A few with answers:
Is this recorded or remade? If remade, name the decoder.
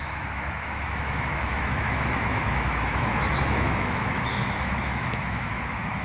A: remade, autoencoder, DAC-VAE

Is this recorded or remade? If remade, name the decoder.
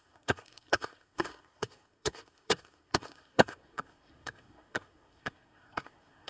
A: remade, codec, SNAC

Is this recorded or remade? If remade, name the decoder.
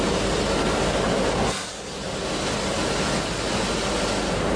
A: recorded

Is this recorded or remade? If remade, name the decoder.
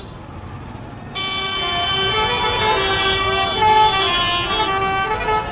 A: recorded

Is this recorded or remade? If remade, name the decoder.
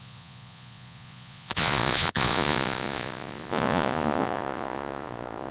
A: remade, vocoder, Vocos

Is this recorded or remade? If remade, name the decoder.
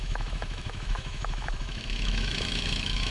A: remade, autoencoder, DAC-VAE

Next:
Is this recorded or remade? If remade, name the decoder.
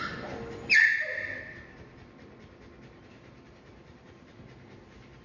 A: recorded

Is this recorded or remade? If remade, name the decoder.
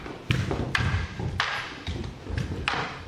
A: recorded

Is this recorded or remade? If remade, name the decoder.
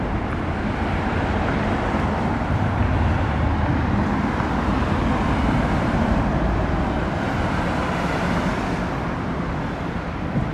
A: remade, vocoder, BigVGAN v2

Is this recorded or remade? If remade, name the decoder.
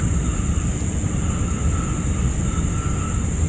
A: recorded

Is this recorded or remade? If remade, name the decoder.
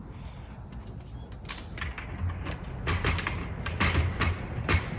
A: recorded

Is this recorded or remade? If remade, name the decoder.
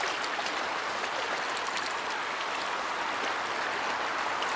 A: recorded